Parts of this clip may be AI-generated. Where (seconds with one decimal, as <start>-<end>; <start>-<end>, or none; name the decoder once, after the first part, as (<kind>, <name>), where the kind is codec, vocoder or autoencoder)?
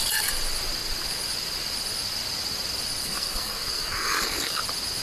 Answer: 3.0-4.6 (codec, SNAC)